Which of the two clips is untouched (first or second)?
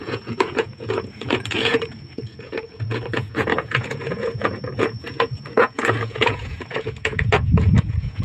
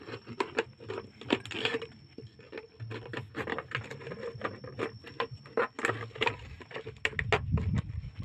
second